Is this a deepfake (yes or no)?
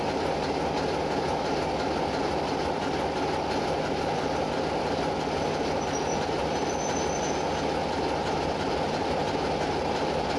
no